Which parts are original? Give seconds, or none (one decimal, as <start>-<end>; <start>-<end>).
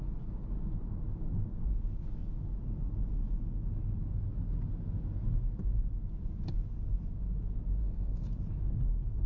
0.0-7.8; 8.3-9.3